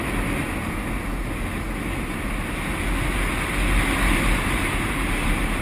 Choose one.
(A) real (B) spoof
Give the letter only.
A